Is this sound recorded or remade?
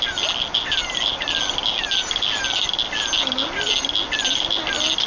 recorded